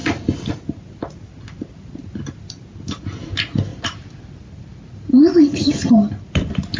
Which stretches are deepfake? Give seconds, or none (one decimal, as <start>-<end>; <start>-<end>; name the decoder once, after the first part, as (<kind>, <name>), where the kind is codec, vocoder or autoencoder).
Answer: 0.0-0.5 (vocoder, BigVGAN v2); 3.7-5.9